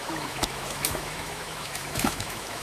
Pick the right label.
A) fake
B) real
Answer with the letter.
A